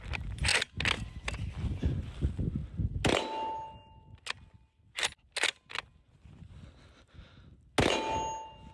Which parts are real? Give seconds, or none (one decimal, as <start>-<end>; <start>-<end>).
0.0-8.7